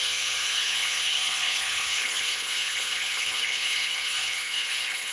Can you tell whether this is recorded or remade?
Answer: remade